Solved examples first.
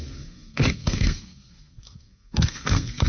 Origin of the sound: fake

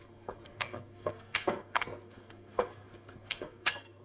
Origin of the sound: fake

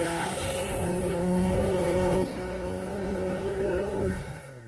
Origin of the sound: fake